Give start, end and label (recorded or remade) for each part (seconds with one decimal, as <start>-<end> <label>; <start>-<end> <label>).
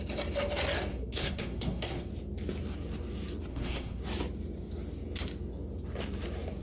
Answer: 0.0-0.9 recorded; 0.9-2.1 remade; 2.1-3.5 recorded; 3.5-4.0 remade; 4.0-6.6 recorded